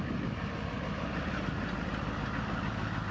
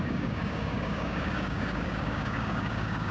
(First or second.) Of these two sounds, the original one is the first